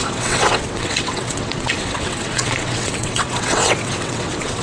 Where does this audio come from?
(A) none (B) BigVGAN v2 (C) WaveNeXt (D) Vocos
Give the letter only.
C